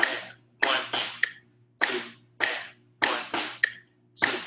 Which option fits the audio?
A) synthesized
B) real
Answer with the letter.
B